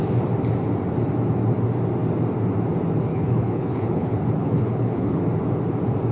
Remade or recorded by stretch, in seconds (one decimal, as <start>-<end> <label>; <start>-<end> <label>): 0.0-3.1 recorded; 3.1-5.2 remade; 5.2-6.1 recorded